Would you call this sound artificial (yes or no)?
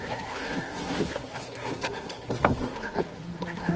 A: yes